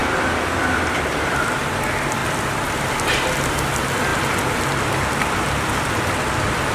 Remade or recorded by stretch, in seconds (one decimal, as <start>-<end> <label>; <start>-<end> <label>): 0.0-2.2 remade; 2.2-3.5 recorded; 3.5-6.7 remade